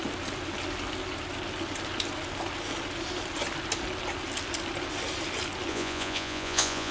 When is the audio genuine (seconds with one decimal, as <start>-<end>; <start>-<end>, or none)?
0.0-5.7